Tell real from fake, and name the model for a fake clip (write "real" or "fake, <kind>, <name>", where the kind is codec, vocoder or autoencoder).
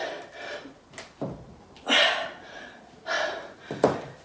real